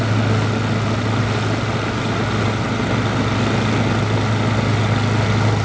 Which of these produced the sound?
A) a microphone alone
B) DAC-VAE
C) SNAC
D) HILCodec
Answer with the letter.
A